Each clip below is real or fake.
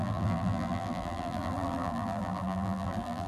fake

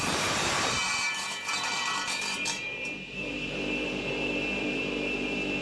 fake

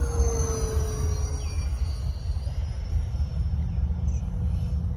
real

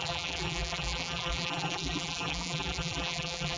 fake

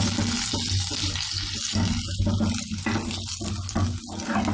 real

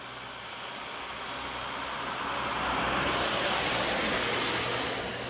real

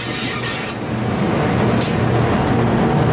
real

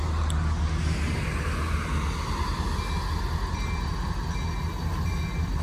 real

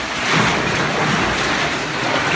real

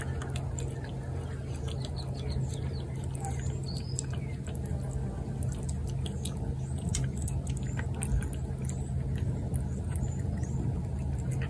real